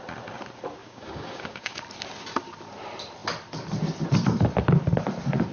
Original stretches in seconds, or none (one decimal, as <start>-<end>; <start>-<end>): 0.0-0.8; 1.8-5.5